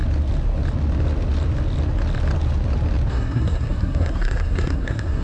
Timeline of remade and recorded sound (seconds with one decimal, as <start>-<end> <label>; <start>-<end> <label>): 0.0-3.1 recorded; 3.1-5.2 remade